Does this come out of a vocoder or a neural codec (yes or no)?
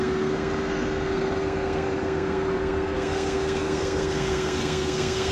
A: yes